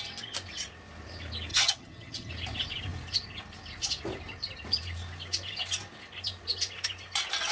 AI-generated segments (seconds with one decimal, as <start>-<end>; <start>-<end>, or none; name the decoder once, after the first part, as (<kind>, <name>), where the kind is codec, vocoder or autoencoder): 1.5-2.3 (vocoder, HiFi-GAN)